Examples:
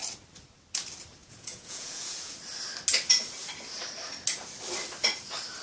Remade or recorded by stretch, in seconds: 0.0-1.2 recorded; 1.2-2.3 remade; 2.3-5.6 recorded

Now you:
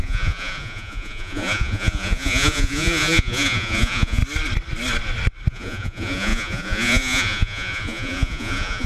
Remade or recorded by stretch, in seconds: 0.0-4.2 remade; 4.2-5.5 recorded; 5.5-8.9 remade

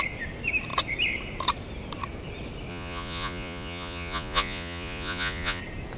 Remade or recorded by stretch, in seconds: 0.0-2.7 recorded; 2.7-5.6 remade; 5.6-6.0 recorded

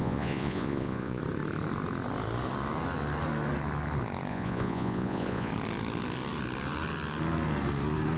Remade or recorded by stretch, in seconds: 0.0-1.2 remade; 1.2-4.3 recorded; 4.3-5.5 remade; 5.5-8.2 recorded

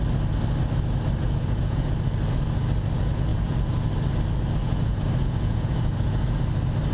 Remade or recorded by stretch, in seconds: 0.0-1.2 recorded; 1.2-1.9 remade; 1.9-3.3 recorded; 3.3-3.9 remade; 3.9-4.6 recorded; 4.6-6.4 remade; 6.4-6.9 recorded

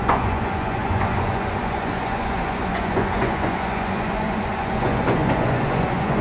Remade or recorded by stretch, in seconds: 0.0-6.2 remade

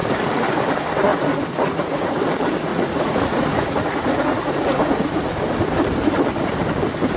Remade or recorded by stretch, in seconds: 0.0-1.1 recorded; 1.1-2.2 remade; 2.2-2.7 recorded; 2.7-5.2 remade; 5.2-7.2 recorded

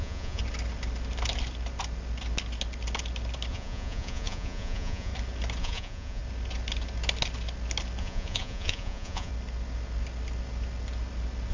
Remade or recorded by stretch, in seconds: 0.0-0.4 remade; 0.4-3.5 recorded; 3.5-5.1 remade; 5.1-5.6 recorded; 5.6-6.2 remade; 6.2-8.0 recorded; 8.0-9.3 remade; 9.3-11.5 recorded